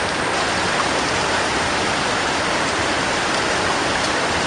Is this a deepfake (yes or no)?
no